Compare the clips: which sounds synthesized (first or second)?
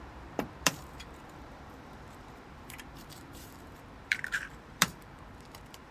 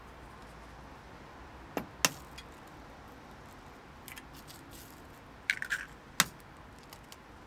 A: first